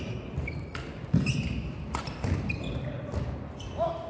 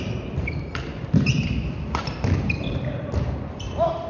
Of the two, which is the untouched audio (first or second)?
first